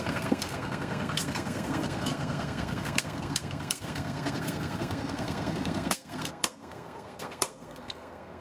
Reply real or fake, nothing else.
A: fake